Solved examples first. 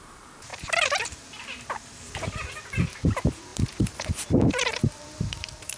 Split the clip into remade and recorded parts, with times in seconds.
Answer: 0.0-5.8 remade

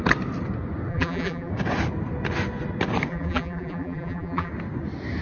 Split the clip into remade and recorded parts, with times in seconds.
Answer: 0.0-0.9 recorded; 0.9-1.5 remade; 1.5-3.1 recorded; 3.1-4.5 remade; 4.5-5.2 recorded

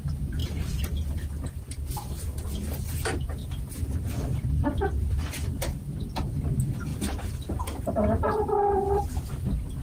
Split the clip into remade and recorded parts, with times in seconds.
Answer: 0.0-9.8 recorded

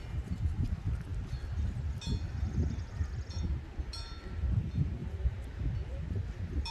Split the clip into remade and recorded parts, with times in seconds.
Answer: 0.0-0.6 remade; 0.6-5.0 recorded; 5.0-5.6 remade; 5.6-6.7 recorded